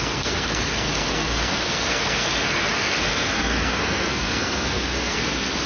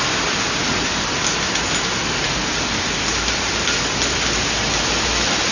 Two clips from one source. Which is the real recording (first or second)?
second